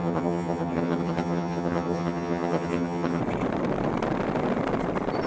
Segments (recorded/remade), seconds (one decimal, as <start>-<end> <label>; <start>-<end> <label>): 0.0-3.2 remade; 3.2-5.3 recorded